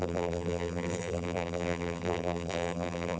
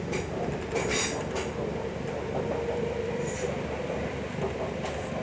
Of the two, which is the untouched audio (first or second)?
second